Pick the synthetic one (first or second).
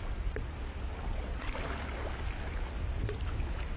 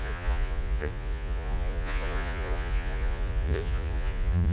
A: second